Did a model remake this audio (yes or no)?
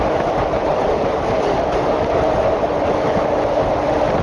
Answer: no